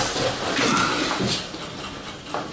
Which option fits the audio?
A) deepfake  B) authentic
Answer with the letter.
B